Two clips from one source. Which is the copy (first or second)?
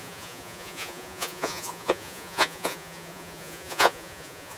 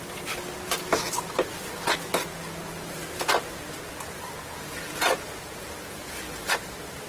first